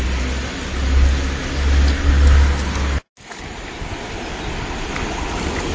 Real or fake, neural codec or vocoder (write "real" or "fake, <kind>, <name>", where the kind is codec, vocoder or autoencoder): real